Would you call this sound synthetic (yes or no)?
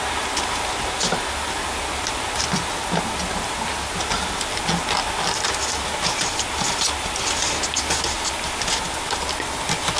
no